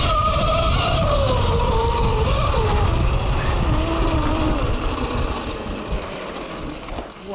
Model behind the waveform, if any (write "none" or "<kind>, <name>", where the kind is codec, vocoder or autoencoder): none